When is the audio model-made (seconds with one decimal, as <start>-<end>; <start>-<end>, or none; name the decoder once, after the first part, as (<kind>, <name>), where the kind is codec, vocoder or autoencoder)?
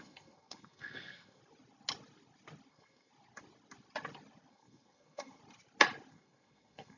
0.0-1.4 (codec, SNAC); 2.7-3.1; 4.5-5.4; 6.1-7.0